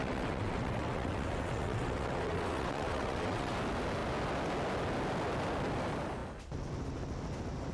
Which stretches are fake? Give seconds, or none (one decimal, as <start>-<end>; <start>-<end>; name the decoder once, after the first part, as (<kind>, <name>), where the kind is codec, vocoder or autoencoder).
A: 0.0-3.5 (vocoder, WaveNeXt)